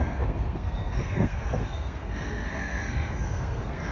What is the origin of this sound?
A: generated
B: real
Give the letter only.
A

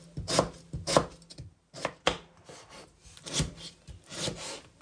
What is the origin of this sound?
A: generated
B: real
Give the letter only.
B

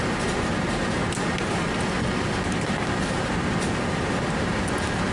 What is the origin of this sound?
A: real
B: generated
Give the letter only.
A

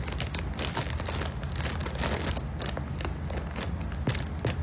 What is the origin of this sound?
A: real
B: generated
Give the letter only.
A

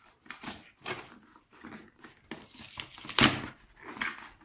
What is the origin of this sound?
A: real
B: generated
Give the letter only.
A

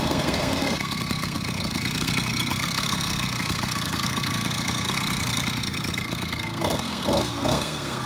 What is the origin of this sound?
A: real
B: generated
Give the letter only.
B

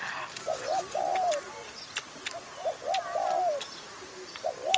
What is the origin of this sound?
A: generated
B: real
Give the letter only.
B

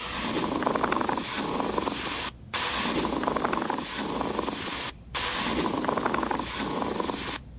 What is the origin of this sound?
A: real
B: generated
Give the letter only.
A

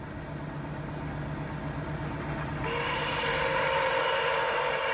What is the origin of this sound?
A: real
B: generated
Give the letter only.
A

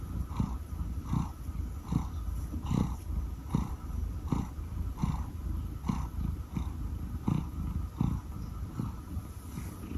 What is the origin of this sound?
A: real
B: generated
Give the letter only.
A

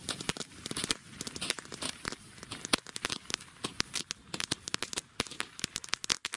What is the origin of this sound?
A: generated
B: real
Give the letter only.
B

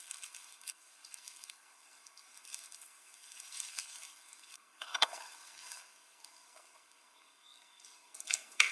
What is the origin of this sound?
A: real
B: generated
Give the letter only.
B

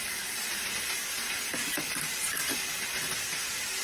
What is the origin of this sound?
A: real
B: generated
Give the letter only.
A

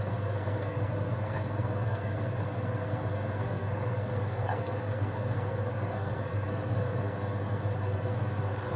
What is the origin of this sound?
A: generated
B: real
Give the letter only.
A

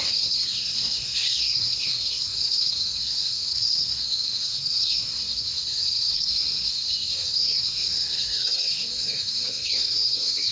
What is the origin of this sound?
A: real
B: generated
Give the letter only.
B